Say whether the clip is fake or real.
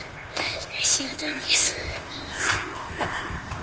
fake